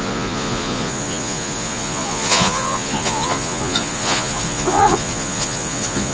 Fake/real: fake